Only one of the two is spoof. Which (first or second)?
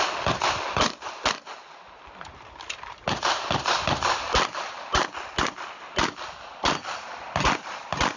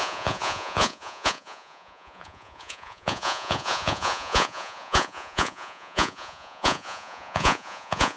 second